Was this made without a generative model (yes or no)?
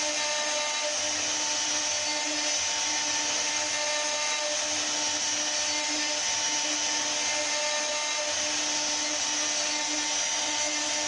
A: yes